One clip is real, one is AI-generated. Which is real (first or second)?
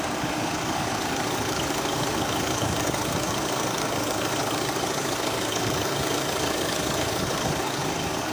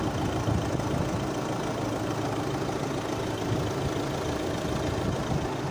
second